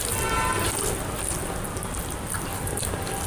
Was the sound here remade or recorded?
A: remade